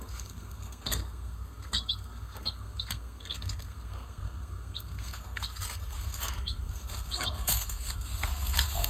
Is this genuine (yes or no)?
no